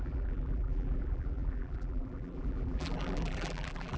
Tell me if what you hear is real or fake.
fake